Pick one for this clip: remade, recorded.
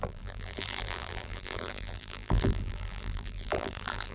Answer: remade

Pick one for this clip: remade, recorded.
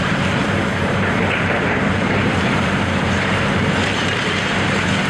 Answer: remade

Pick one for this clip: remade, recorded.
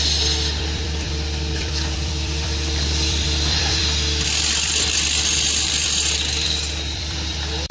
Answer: remade